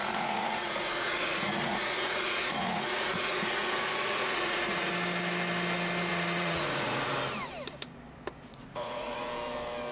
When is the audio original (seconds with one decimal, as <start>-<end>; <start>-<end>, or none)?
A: 4.9-6.1; 7.1-8.5; 9.3-9.9